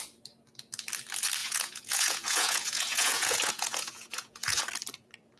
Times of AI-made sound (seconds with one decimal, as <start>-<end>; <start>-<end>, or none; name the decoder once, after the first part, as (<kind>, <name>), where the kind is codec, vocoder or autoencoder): 1.4-4.6 (vocoder, Vocos)